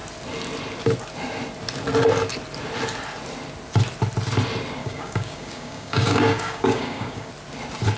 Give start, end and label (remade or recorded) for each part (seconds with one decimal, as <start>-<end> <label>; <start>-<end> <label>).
0.0-4.8 recorded; 4.8-7.3 remade; 7.3-8.0 recorded